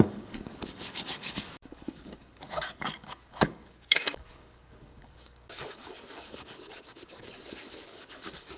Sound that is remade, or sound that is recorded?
remade